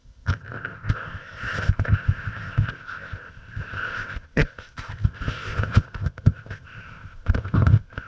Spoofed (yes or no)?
yes